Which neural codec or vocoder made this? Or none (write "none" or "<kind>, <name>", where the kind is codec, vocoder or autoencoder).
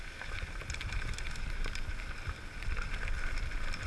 none